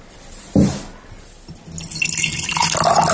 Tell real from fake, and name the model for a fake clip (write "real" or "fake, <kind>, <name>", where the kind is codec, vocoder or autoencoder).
real